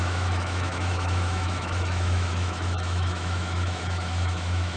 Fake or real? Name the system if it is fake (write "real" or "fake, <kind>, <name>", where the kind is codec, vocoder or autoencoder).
fake, autoencoder, DAC-VAE